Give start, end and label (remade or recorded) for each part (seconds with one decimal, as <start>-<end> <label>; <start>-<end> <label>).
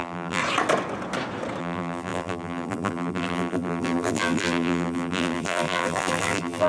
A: 0.0-0.4 remade; 0.4-1.6 recorded; 1.6-6.7 remade